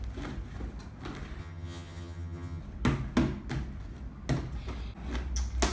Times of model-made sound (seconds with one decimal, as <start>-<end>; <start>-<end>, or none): 1.4-2.6